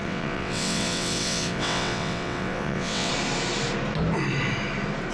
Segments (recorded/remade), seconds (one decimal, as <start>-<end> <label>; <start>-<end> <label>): 0.0-3.1 remade; 3.1-5.1 recorded